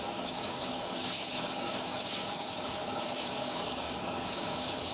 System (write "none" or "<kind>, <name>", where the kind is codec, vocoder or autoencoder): codec, DAC